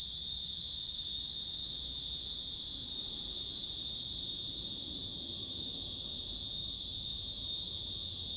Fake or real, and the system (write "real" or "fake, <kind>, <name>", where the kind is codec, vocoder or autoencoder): fake, vocoder, BigVGAN v2